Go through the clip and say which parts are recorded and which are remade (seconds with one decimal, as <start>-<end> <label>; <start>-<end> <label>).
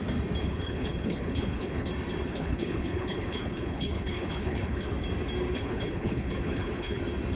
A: 0.0-0.4 recorded; 0.4-1.9 remade; 1.9-2.3 recorded; 2.3-4.9 remade; 4.9-5.5 recorded; 5.5-7.0 remade; 7.0-7.4 recorded